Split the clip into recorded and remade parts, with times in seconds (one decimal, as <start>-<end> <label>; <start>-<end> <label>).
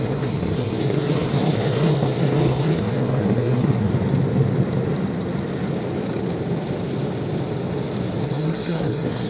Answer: 0.0-3.9 remade; 3.9-8.2 recorded; 8.2-9.3 remade